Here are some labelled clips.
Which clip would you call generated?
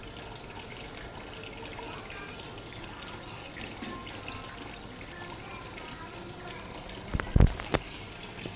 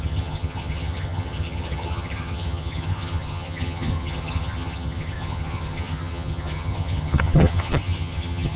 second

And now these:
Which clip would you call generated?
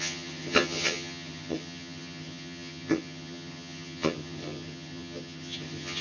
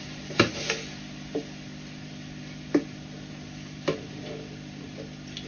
first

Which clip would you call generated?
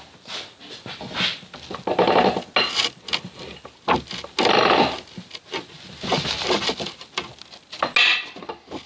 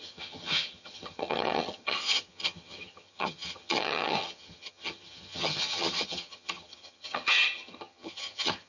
second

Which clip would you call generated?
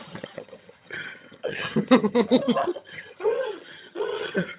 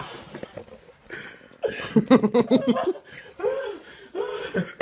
first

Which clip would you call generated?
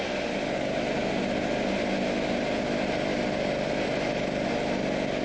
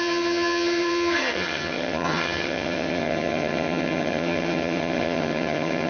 second